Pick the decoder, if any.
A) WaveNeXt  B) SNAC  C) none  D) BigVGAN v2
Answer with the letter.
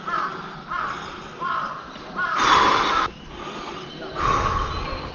C